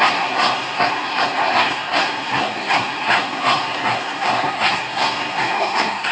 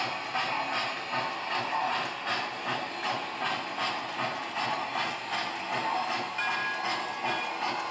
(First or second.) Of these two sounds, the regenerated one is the first